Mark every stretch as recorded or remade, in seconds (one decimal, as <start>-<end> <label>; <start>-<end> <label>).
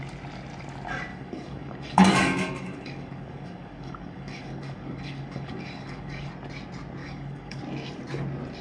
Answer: 0.0-1.1 recorded; 1.1-6.3 remade; 6.3-7.0 recorded; 7.0-7.6 remade; 7.6-8.6 recorded